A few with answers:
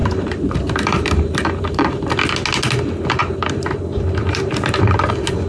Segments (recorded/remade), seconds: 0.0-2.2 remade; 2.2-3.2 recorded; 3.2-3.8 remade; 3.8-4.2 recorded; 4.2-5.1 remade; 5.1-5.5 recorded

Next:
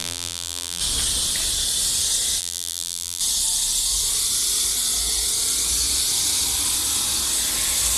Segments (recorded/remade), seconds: 0.0-0.8 remade; 0.8-2.4 recorded; 2.4-3.2 remade; 3.2-8.0 recorded

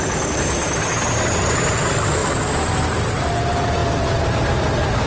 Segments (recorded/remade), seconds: 0.0-2.2 recorded; 2.2-3.3 remade; 3.3-5.1 recorded

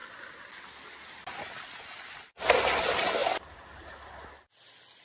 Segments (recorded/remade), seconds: 0.0-3.2 recorded; 3.2-4.5 remade; 4.5-5.0 recorded

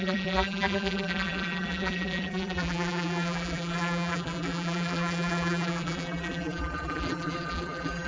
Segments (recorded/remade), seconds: 0.0-8.1 remade

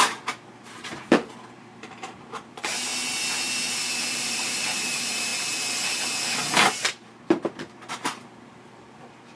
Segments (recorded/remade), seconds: 0.0-2.9 remade; 2.9-4.1 recorded; 4.1-5.3 remade; 5.3-7.9 recorded; 7.9-9.4 remade

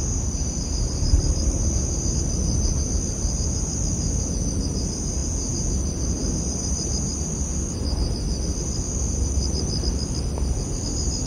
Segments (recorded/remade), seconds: 0.0-11.3 recorded